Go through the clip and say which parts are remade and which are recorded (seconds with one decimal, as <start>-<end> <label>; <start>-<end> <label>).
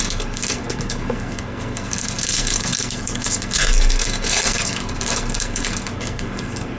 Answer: 0.0-6.8 remade